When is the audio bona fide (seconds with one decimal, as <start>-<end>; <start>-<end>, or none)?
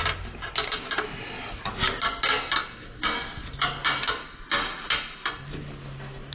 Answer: 0.0-6.3